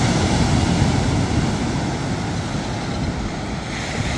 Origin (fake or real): real